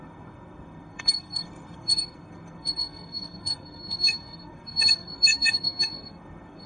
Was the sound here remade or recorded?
remade